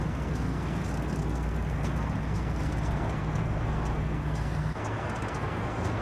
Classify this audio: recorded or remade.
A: remade